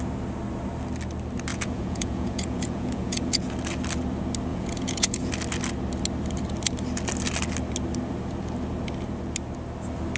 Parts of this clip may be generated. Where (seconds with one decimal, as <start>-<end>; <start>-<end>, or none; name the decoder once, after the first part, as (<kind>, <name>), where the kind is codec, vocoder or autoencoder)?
1.5-3.5 (vocoder, Vocos); 4.5-5.3